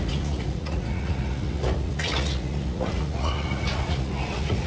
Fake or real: fake